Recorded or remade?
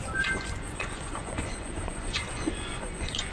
remade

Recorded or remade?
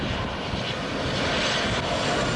recorded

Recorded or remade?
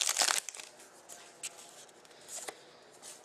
recorded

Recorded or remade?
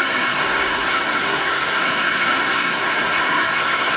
remade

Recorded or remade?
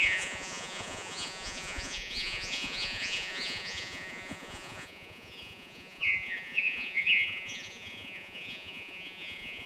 remade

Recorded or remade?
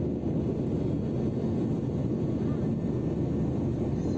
recorded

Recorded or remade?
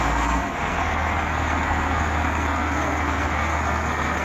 remade